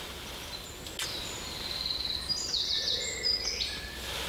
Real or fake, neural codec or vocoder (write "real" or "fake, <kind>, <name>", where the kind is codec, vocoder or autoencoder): real